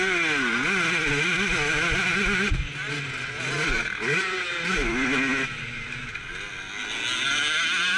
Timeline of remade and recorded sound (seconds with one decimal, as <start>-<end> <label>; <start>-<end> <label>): 0.0-8.0 recorded

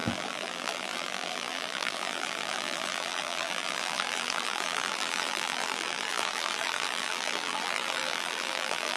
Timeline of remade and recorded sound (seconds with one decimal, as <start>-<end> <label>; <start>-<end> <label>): 0.0-9.0 remade

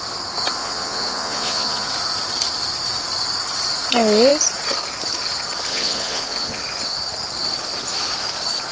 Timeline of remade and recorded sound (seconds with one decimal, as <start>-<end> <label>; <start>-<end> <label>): 0.0-0.6 recorded; 0.6-1.9 remade; 1.9-5.7 recorded; 5.7-6.6 remade; 6.6-8.7 recorded

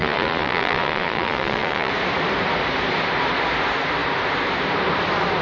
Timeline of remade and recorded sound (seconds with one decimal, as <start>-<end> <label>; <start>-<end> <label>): 0.0-1.9 remade; 1.9-5.4 recorded

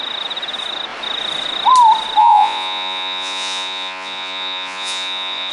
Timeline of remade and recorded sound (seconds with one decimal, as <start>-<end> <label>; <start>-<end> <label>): 0.0-2.2 recorded; 2.2-5.5 remade

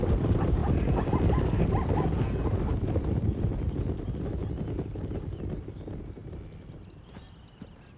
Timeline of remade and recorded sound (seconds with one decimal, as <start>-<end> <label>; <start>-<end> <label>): 0.0-8.0 recorded

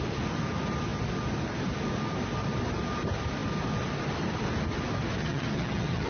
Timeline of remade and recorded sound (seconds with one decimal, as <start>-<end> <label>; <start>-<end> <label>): 0.0-5.2 recorded; 5.2-6.1 remade

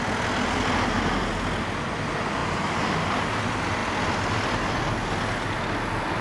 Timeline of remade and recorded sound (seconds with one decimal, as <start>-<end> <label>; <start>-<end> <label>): 0.0-6.2 recorded